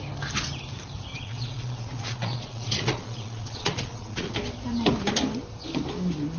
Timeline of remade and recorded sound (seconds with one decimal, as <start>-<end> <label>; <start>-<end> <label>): 0.0-1.1 recorded; 1.1-4.3 remade; 4.3-6.4 recorded

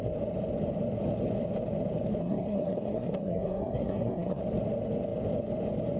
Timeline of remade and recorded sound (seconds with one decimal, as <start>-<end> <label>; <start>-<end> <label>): 0.0-2.2 recorded; 2.2-4.4 remade; 4.4-6.0 recorded

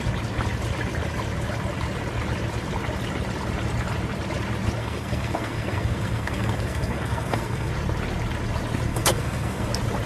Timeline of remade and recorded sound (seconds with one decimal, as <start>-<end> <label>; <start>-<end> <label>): 0.0-4.8 recorded; 4.8-7.7 remade; 7.7-8.9 recorded; 8.9-9.7 remade; 9.7-10.1 recorded

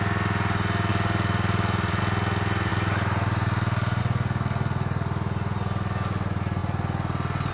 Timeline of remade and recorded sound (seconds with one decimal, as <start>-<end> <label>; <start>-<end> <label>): 0.0-0.9 recorded; 0.9-2.0 remade; 2.0-7.5 recorded

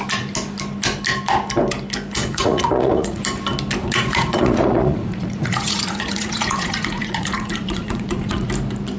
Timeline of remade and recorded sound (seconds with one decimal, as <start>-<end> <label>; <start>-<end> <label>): 0.0-2.2 recorded; 2.2-3.2 remade; 3.2-3.8 recorded; 3.8-8.5 remade; 8.5-9.0 recorded

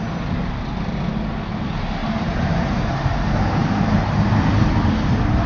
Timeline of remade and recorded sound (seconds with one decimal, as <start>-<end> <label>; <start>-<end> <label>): 0.0-2.0 recorded; 2.0-3.1 remade; 3.1-3.6 recorded; 3.6-4.3 remade; 4.3-5.5 recorded